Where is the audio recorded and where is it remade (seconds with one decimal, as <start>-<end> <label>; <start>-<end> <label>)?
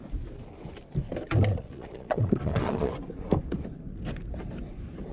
0.0-1.5 recorded; 1.5-2.9 remade; 2.9-5.1 recorded